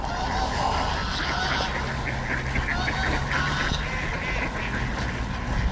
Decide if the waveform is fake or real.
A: real